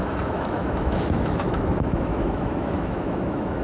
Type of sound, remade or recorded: remade